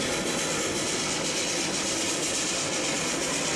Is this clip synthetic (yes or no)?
no